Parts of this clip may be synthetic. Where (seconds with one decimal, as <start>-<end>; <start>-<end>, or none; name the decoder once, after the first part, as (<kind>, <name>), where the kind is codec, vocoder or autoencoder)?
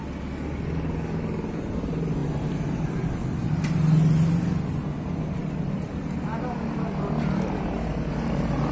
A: none